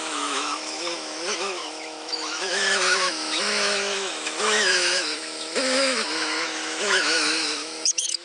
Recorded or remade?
remade